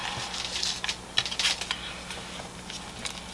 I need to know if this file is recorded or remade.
recorded